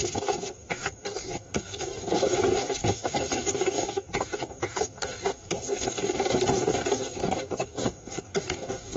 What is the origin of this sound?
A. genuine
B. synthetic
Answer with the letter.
B